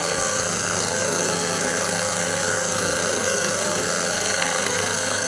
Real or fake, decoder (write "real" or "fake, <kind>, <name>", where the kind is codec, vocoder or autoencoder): fake, codec, SNAC